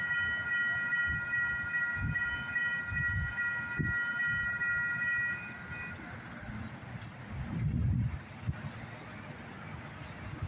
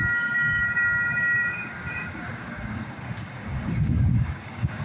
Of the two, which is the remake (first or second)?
second